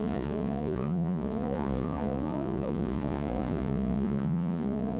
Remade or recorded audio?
remade